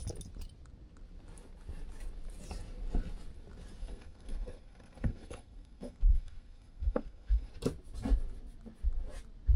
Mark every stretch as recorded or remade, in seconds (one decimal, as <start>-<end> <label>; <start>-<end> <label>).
0.0-3.8 recorded; 3.8-7.5 remade; 7.5-9.6 recorded

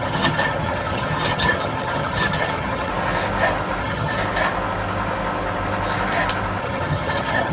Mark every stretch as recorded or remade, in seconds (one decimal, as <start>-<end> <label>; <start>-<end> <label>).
0.0-2.9 remade; 2.9-3.8 recorded; 3.8-4.2 remade; 4.2-6.6 recorded; 6.6-7.5 remade

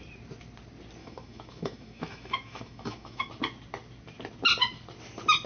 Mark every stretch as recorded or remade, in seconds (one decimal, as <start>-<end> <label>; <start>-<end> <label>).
0.0-1.0 recorded; 1.0-3.3 remade; 3.3-5.5 recorded

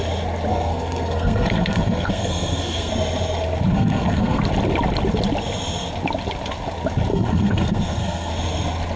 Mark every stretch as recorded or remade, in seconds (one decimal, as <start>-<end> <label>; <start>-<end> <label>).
0.0-0.5 recorded; 0.5-2.9 remade; 2.9-3.7 recorded; 3.7-4.4 remade; 4.4-7.1 recorded; 7.1-8.3 remade; 8.3-9.0 recorded

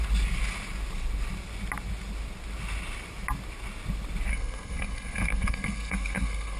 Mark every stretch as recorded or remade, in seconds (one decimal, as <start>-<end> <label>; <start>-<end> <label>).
0.0-4.3 recorded; 4.3-6.6 remade

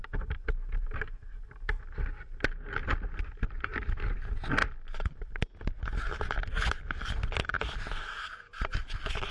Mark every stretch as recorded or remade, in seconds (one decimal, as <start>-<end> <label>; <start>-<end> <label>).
0.0-9.3 recorded

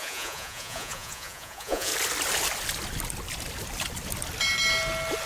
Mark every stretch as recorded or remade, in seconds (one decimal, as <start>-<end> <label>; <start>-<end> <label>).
0.0-1.9 remade; 1.9-5.3 recorded